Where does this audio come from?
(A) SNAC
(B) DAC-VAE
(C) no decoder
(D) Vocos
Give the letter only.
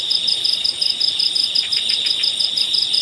C